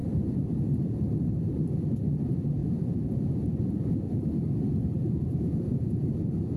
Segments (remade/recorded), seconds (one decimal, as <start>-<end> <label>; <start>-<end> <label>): 0.0-2.6 recorded; 2.6-3.5 remade; 3.5-5.0 recorded; 5.0-6.0 remade; 6.0-6.6 recorded